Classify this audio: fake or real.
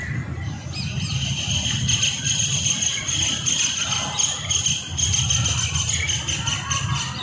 real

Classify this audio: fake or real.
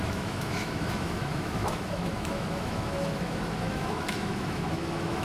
fake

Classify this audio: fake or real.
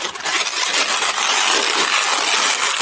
real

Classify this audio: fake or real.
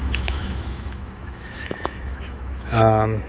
fake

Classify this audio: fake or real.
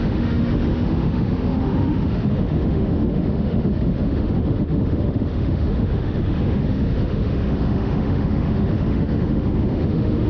fake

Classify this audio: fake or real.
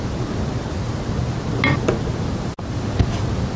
real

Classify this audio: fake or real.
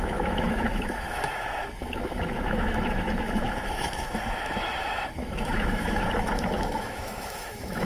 fake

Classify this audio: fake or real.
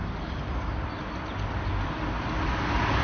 real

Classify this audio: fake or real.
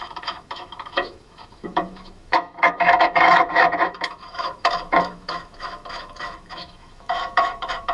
fake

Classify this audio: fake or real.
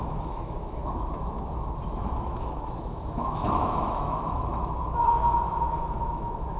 fake